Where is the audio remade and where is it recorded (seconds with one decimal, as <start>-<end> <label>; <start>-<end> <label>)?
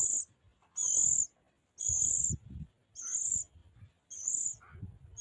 0.0-3.6 recorded; 3.6-4.6 remade; 4.6-5.2 recorded